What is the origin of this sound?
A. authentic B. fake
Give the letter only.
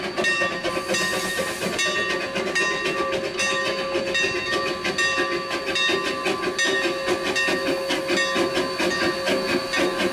A